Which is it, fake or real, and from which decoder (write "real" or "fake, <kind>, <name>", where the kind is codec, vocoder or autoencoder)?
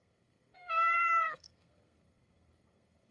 fake, codec, SNAC